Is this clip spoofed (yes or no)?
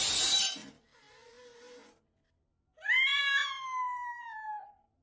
no